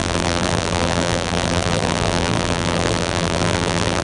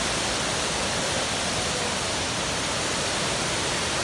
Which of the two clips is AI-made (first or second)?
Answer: first